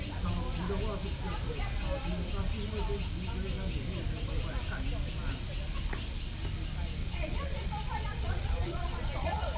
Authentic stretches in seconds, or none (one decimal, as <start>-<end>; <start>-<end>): 0.0-7.0